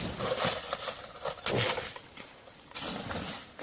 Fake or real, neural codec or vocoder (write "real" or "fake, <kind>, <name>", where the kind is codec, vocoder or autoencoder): real